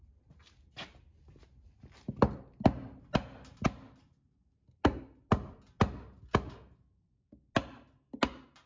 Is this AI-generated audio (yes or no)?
no